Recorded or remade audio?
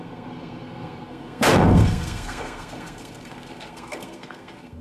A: remade